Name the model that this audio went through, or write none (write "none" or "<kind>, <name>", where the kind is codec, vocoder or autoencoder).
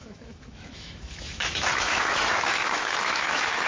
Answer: autoencoder, DAC-VAE